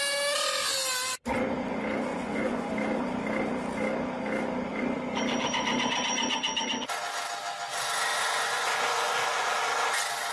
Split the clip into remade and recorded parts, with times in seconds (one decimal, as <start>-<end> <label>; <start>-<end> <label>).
0.0-2.1 recorded; 2.1-2.7 remade; 2.7-8.1 recorded; 8.1-9.6 remade; 9.6-10.3 recorded